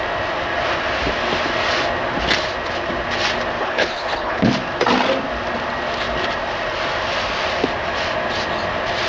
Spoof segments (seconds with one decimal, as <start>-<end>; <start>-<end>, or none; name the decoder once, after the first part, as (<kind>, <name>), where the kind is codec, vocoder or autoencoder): 3.6-4.5 (codec, HILCodec)